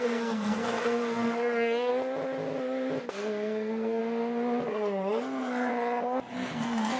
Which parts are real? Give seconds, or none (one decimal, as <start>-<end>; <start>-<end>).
1.9-3.1; 4.0-4.7; 5.7-6.3